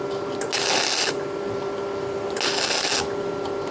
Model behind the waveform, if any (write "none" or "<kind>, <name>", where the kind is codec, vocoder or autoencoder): none